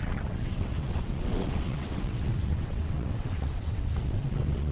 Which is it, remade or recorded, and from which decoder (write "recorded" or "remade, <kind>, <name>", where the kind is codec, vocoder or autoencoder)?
remade, vocoder, WaveNeXt